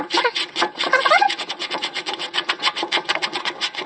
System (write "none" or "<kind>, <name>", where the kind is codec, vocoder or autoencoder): vocoder, WaveNeXt